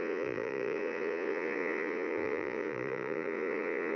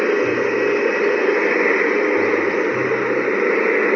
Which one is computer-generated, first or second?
first